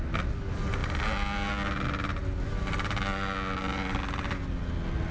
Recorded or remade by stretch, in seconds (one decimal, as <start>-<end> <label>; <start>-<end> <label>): 0.0-5.1 recorded